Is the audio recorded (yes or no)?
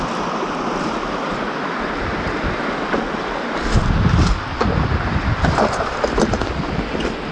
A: yes